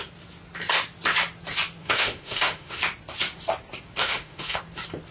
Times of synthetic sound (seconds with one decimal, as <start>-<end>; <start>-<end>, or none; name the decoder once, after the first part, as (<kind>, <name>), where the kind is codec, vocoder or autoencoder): 1.8-2.8 (autoencoder, DAC-VAE); 4.0-4.6